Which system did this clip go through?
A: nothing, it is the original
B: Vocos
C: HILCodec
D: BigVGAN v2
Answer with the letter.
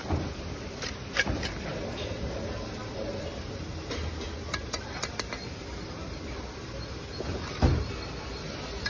A